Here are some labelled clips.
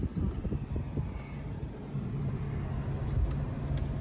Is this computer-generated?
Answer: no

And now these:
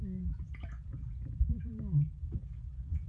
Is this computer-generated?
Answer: yes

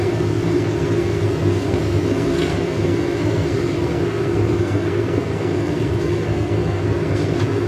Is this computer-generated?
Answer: yes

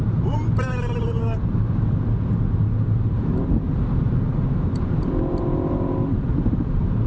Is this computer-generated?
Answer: yes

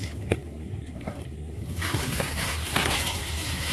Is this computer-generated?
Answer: yes